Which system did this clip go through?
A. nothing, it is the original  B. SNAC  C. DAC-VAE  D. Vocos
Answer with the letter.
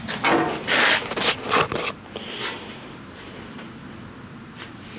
A